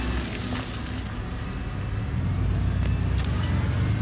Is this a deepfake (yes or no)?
no